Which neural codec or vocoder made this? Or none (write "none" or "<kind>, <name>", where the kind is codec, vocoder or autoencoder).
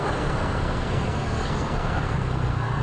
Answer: codec, SNAC